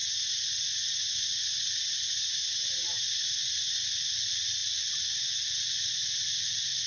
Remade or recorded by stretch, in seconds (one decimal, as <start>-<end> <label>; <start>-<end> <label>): 0.0-4.0 remade; 4.0-6.9 recorded